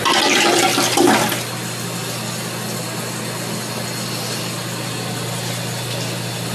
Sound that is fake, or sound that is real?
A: real